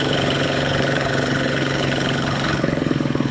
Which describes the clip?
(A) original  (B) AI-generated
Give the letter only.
B